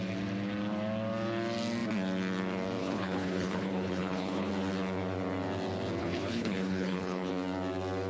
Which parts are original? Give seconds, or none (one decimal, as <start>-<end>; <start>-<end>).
0.0-2.8; 4.5-6.0; 7.3-8.1